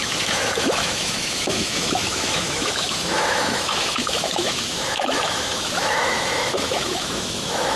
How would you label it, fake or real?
fake